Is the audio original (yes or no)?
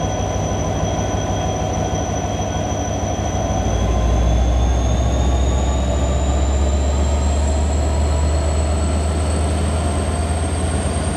yes